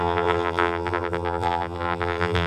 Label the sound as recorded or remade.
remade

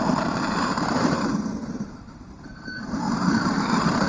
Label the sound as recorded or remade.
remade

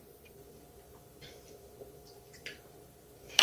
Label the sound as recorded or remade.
remade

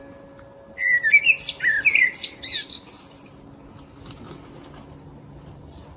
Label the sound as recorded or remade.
recorded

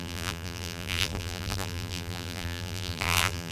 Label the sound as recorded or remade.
remade